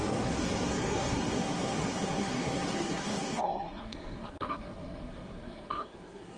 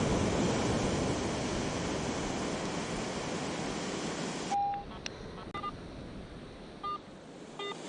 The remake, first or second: first